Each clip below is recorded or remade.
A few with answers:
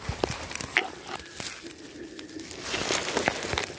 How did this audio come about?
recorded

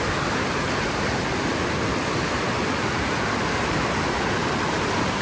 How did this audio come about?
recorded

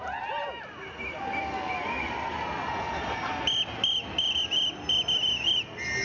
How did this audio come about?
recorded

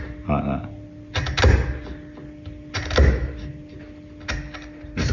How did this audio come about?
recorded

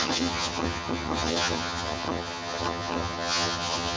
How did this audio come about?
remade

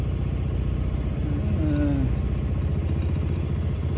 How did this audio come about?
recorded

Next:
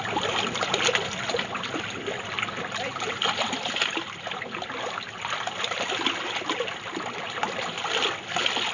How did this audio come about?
recorded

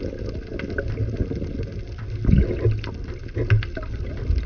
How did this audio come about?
recorded